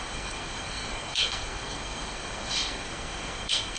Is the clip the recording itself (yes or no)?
no